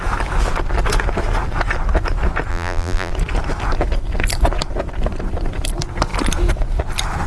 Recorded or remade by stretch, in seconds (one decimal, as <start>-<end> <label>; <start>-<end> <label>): 0.0-2.5 recorded; 2.5-3.1 remade; 3.1-7.3 recorded